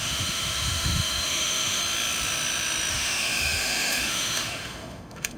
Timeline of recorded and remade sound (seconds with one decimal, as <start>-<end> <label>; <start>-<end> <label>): 0.0-1.8 remade; 1.8-2.9 recorded; 2.9-5.4 remade